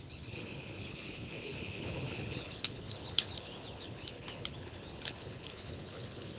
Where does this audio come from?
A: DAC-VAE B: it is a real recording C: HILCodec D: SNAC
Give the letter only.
C